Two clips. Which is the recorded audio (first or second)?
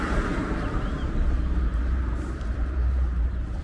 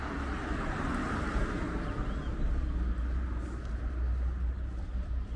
second